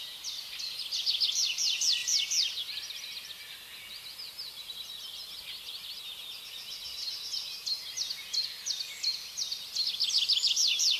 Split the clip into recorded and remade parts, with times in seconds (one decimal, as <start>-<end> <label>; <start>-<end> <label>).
0.0-11.0 recorded